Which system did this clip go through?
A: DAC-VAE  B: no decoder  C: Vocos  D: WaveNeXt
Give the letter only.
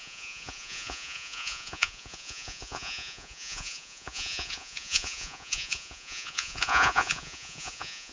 C